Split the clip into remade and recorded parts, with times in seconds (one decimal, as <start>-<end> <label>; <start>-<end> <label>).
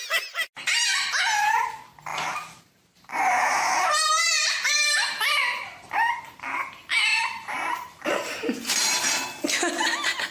0.0-2.1 recorded; 2.1-6.1 remade; 6.1-7.1 recorded; 7.1-9.0 remade; 9.0-10.3 recorded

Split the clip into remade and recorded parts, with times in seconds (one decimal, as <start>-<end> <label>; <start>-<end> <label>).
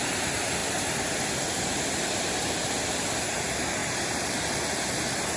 0.0-0.6 recorded; 0.6-3.0 remade; 3.0-3.8 recorded; 3.8-4.3 remade; 4.3-5.4 recorded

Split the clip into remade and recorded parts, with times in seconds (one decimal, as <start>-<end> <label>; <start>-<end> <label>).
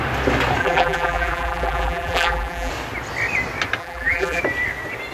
0.0-0.6 recorded; 0.6-2.7 remade; 2.7-3.8 recorded; 3.8-4.4 remade; 4.4-5.1 recorded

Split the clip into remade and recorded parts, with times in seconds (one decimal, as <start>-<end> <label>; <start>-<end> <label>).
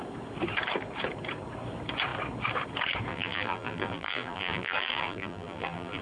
0.0-3.1 recorded; 3.1-6.0 remade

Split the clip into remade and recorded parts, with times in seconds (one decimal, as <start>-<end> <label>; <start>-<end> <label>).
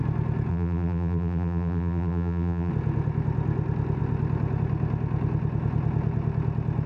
0.0-0.5 recorded; 0.5-2.7 remade; 2.7-6.9 recorded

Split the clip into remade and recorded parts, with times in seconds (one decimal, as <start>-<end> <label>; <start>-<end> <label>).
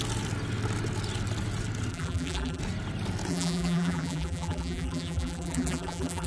0.0-1.9 recorded; 1.9-2.6 remade; 2.6-3.3 recorded; 3.3-6.3 remade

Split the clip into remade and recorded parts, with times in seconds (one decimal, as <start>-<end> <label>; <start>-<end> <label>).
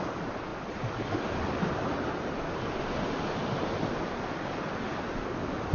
0.0-0.5 remade; 0.5-3.9 recorded; 3.9-5.7 remade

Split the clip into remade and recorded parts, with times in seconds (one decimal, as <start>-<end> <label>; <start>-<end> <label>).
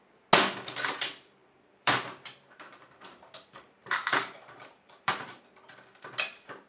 0.0-1.4 recorded; 1.4-5.4 remade; 5.4-6.7 recorded